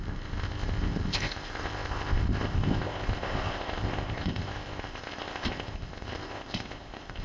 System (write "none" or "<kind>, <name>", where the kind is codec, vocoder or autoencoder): codec, ZipCodec